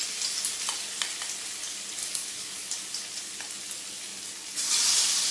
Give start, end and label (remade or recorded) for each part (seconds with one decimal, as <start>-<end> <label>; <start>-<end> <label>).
0.0-2.0 recorded; 2.0-2.7 remade; 2.7-5.3 recorded

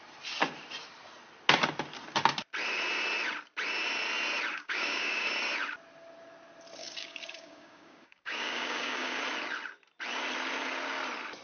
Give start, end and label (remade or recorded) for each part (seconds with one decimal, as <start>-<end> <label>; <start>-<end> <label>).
0.0-4.5 recorded; 4.5-5.3 remade; 5.3-6.8 recorded; 6.8-9.2 remade; 9.2-11.4 recorded

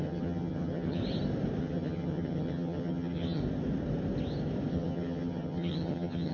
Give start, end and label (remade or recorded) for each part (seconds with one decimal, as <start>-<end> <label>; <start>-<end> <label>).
0.0-1.0 remade; 1.0-1.6 recorded; 1.6-3.4 remade; 3.4-4.7 recorded; 4.7-6.3 remade

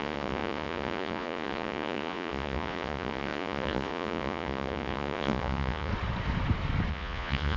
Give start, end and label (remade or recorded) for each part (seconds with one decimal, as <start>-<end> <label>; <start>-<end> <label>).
0.0-5.9 remade; 5.9-6.9 recorded; 6.9-7.6 remade

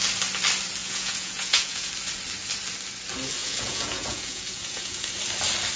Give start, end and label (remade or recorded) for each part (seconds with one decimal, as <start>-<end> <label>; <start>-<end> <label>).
0.0-0.8 recorded; 0.8-1.9 remade; 1.9-3.4 recorded; 3.4-5.1 remade; 5.1-5.8 recorded

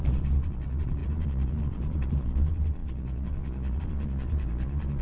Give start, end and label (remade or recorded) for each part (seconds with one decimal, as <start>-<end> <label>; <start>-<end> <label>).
0.0-5.0 remade